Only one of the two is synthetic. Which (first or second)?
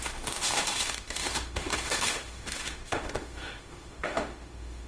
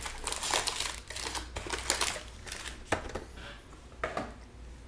first